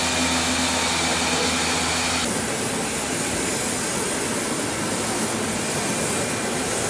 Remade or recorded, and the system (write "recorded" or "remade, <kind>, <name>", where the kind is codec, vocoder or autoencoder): recorded